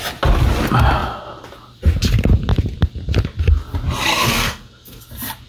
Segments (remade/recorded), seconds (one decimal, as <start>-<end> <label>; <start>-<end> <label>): 0.0-4.1 recorded; 4.1-5.0 remade; 5.0-5.5 recorded